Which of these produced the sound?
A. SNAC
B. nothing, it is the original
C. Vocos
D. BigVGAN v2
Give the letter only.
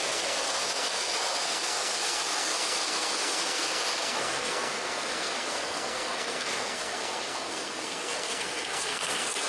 A